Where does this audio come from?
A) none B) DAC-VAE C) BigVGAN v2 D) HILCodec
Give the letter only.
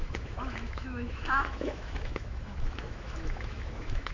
B